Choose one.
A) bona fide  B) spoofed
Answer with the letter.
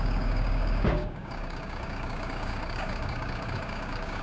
B